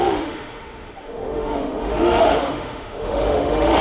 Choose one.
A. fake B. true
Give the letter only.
A